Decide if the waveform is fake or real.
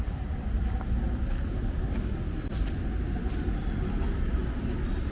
real